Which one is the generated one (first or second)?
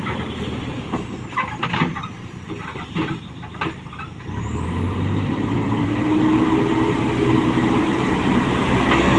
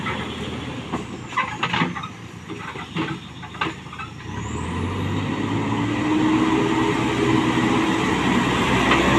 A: first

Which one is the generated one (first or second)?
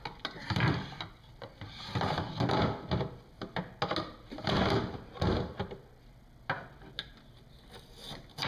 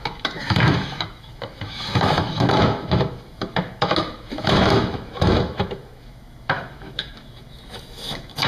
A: second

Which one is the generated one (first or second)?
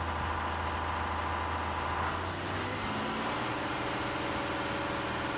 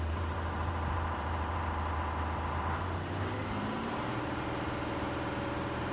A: second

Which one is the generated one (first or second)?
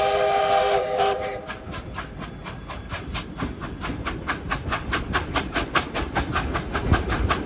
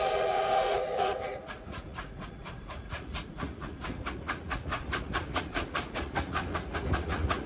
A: second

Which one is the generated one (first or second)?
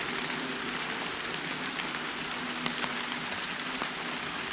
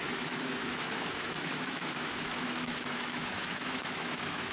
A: second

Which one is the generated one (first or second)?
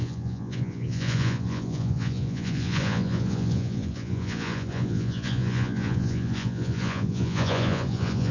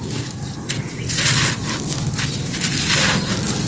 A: first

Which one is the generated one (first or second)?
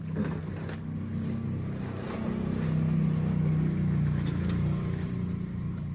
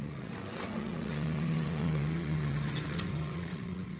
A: second